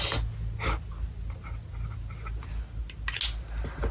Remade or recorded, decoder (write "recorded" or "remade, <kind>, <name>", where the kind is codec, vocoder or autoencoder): recorded